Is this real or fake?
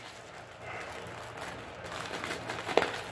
real